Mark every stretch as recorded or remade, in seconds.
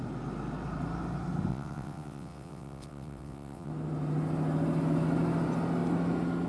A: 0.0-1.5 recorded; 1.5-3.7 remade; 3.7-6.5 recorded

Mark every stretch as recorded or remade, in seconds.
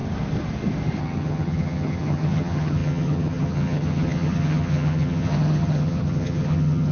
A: 0.0-1.0 recorded; 1.0-6.9 remade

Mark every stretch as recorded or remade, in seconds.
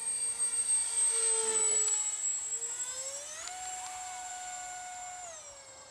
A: 0.0-5.9 recorded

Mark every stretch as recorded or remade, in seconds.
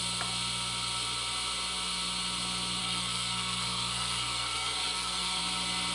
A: 0.0-2.8 recorded; 2.8-5.4 remade; 5.4-5.9 recorded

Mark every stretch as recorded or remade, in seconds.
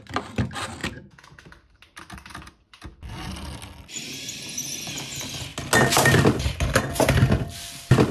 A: 0.0-0.8 recorded; 0.8-1.4 remade; 1.4-8.1 recorded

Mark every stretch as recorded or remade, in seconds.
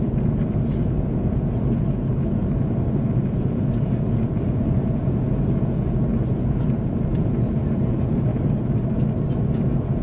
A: 0.0-2.4 remade; 2.4-3.2 recorded; 3.2-8.3 remade; 8.3-9.4 recorded; 9.4-10.0 remade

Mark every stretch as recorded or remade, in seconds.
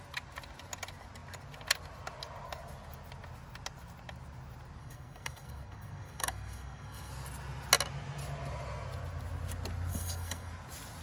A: 0.0-4.8 recorded; 4.8-7.1 remade; 7.1-9.9 recorded; 9.9-10.5 remade; 10.5-11.0 recorded